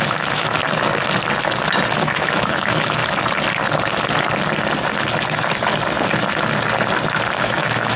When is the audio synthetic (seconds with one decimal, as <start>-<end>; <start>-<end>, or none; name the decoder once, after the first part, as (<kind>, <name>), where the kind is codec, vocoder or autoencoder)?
0.0-0.6 (autoencoder, DAC-VAE); 2.0-3.0; 7.4-8.0

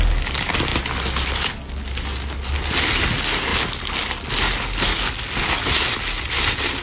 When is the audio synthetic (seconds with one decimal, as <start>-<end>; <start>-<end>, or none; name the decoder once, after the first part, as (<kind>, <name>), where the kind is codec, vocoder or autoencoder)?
none